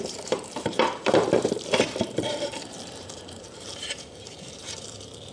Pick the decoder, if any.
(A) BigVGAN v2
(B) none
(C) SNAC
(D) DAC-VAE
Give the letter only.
A